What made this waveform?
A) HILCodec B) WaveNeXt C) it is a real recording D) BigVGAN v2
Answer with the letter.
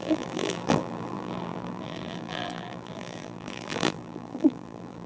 D